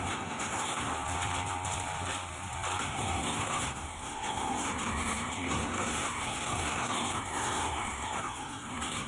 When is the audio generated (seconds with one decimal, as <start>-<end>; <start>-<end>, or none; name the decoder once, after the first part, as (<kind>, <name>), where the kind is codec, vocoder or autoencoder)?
0.0-0.9 (codec, SNAC); 2.8-9.1